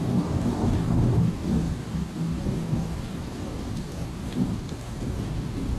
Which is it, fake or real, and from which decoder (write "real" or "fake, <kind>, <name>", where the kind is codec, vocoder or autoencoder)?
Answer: fake, codec, DAC